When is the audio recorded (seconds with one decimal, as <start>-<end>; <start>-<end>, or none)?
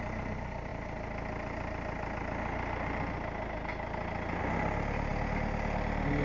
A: 0.0-6.2